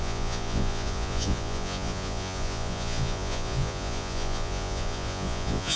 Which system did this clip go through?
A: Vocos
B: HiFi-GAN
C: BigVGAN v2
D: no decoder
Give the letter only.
A